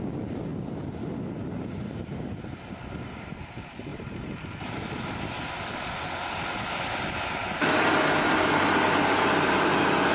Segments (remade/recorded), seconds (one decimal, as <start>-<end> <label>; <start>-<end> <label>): 0.0-3.9 recorded; 3.9-5.3 remade; 5.3-10.1 recorded

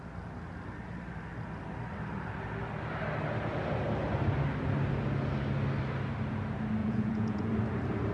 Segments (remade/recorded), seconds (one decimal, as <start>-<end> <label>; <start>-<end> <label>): 0.0-6.8 recorded; 6.8-7.5 remade; 7.5-8.1 recorded

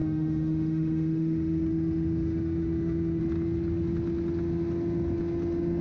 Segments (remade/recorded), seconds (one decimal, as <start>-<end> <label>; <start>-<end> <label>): 0.0-3.2 remade; 3.2-5.8 recorded

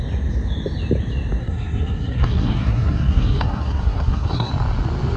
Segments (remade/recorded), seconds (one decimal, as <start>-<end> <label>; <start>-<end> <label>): 0.0-1.4 recorded; 1.4-4.5 remade; 4.5-5.2 recorded

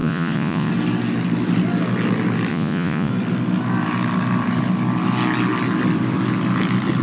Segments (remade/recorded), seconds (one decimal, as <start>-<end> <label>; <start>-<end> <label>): 0.0-0.7 remade; 0.7-2.5 recorded; 2.5-3.1 remade; 3.1-7.0 recorded

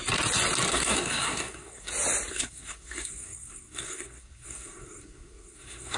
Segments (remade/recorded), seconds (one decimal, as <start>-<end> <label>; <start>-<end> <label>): 0.0-0.7 recorded; 0.7-1.9 remade; 1.9-2.3 recorded; 2.3-6.0 remade

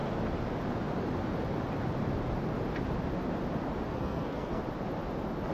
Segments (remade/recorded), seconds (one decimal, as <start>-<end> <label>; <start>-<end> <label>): 0.0-3.9 recorded; 3.9-4.6 remade; 4.6-5.5 recorded